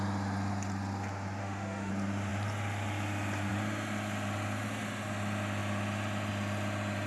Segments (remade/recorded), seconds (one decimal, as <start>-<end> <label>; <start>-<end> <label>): 0.0-1.4 recorded; 1.4-1.9 remade; 1.9-7.1 recorded